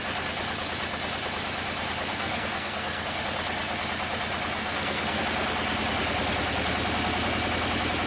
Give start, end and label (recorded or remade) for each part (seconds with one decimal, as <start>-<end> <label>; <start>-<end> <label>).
0.0-2.1 recorded; 2.1-3.2 remade; 3.2-4.6 recorded; 4.6-5.2 remade; 5.2-8.1 recorded